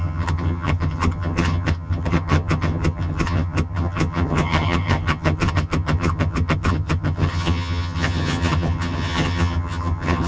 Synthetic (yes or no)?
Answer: yes